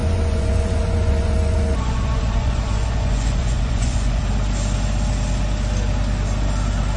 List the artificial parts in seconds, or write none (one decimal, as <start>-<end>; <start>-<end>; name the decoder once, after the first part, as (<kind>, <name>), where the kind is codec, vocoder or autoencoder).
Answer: 0.0-4.2 (vocoder, Vocos)